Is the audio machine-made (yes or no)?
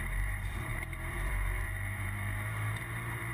yes